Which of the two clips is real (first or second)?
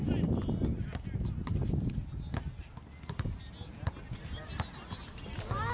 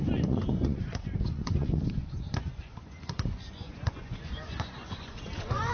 first